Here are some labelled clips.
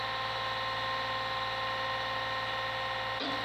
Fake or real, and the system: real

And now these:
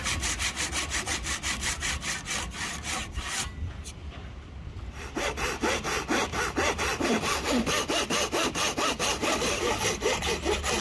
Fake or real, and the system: real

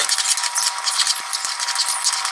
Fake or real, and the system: real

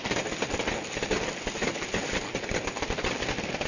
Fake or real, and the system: real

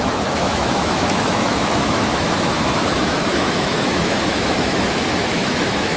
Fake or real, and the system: fake, autoencoder, DAC-VAE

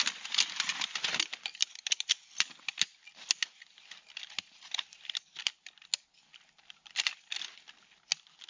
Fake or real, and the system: real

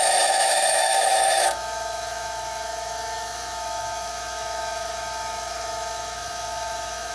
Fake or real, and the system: fake, autoencoder, DAC-VAE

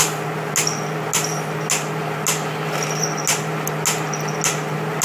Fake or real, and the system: real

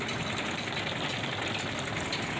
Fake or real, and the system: real